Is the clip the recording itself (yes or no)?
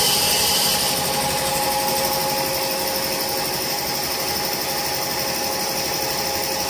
yes